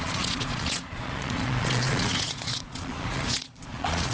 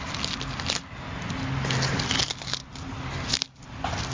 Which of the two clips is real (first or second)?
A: second